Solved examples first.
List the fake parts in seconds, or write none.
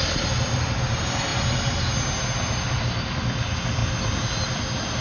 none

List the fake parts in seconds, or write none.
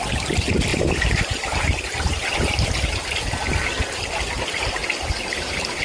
0.7-2.3 (vocoder, BigVGAN v2); 4.8-5.8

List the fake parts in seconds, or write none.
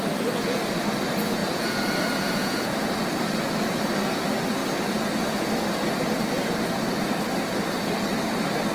1.4-2.6 (vocoder, Vocos)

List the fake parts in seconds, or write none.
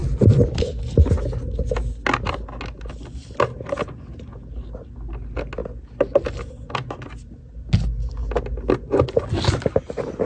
none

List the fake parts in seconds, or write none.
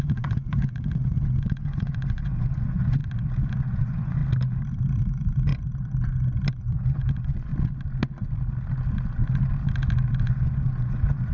0.0-3.0 (vocoder, Vocos); 3.5-4.2; 5.0-5.5; 6.6-7.5; 10.2-11.3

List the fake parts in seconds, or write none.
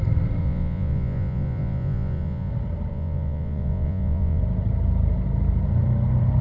0.4-2.5 (vocoder, Vocos); 2.9-4.4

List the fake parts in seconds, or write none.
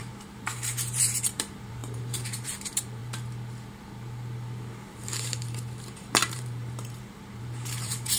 0.0-3.0 (vocoder, BigVGAN v2); 4.9-8.2